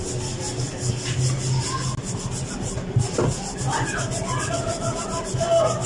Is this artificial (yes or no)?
no